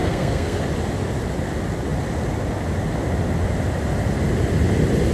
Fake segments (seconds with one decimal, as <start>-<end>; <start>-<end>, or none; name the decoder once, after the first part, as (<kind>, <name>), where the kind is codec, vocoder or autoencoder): 0.0-0.6 (codec, SNAC)